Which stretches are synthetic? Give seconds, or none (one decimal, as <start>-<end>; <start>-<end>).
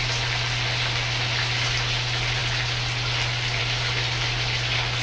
none